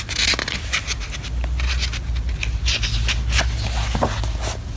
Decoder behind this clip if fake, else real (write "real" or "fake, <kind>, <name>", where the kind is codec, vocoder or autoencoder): real